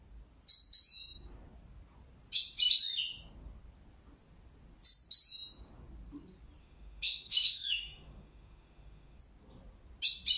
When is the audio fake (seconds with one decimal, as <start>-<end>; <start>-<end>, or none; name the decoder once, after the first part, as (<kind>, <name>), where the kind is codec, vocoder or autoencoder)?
6.6-9.2 (autoencoder, DAC-VAE)